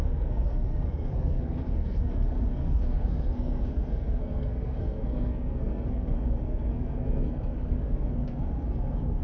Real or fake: fake